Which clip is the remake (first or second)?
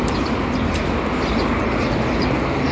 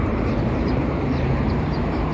second